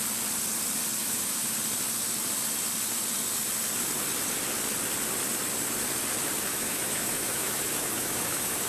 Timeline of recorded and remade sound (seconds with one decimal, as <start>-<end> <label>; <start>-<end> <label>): 0.0-1.0 recorded; 1.0-1.5 remade; 1.5-6.5 recorded; 6.5-8.7 remade